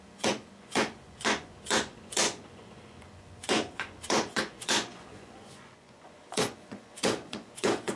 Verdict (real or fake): fake